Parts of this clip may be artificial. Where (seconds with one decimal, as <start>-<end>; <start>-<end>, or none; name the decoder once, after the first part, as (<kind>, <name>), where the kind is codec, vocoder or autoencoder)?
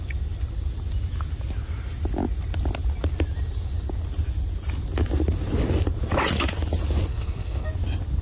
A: 7.1-7.7 (codec, SNAC)